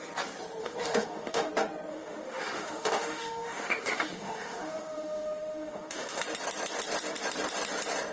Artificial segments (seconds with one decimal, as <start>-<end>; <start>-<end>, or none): 0.6-1.5; 1.9-6.2